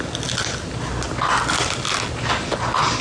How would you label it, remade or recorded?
recorded